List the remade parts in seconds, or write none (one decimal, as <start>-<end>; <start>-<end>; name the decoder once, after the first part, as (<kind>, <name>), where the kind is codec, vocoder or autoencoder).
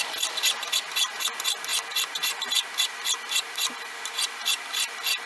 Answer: none